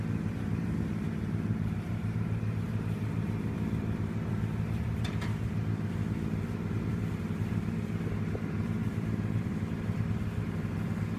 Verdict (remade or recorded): remade